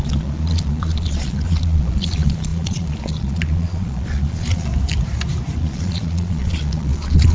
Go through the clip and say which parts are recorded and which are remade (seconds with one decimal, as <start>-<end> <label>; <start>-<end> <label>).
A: 0.0-4.7 remade; 4.7-5.6 recorded; 5.6-7.3 remade